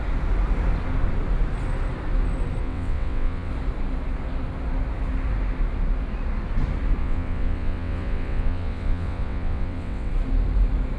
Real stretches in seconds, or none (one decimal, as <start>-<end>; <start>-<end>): 0.0-2.6; 3.5-7.0; 10.1-11.0